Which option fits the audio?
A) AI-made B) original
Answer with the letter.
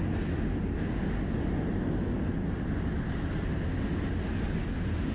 B